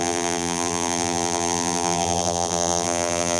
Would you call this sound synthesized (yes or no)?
yes